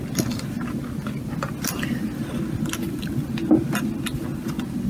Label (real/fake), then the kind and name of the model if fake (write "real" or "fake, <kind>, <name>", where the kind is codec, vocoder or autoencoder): real